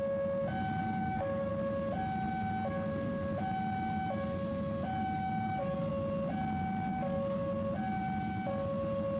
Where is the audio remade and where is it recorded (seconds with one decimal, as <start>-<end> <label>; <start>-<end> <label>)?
0.0-0.8 recorded; 0.8-1.5 remade; 1.5-4.9 recorded; 4.9-5.9 remade; 5.9-6.9 recorded; 6.9-7.5 remade; 7.5-9.2 recorded